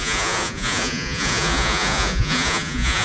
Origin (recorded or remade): remade